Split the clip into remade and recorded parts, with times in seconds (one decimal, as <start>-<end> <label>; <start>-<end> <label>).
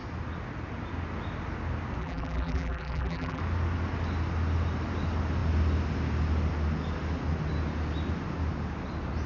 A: 0.0-2.0 recorded; 2.0-3.4 remade; 3.4-9.3 recorded